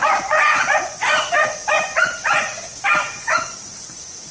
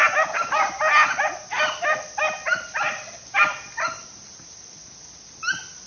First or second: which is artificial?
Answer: first